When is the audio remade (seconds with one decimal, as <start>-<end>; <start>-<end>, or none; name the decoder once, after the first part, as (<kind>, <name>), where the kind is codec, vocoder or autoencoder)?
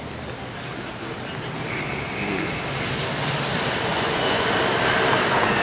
3.9-4.5 (vocoder, Vocos)